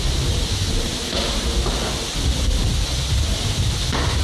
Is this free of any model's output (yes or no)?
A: yes